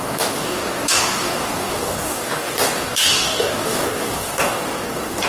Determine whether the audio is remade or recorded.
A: remade